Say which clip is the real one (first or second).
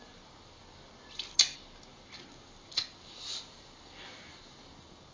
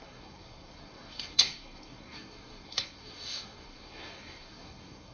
first